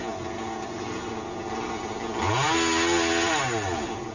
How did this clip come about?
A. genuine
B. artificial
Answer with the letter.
A